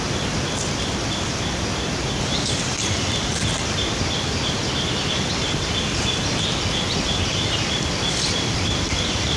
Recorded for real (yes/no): no